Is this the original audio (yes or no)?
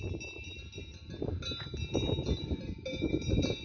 yes